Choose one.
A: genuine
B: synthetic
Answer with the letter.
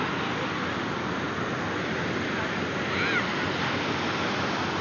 A